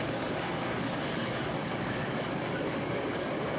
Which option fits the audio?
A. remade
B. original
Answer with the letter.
A